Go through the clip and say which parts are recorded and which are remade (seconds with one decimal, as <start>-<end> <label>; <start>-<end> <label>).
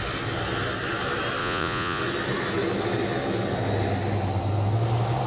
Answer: 0.0-1.4 recorded; 1.4-2.0 remade; 2.0-5.3 recorded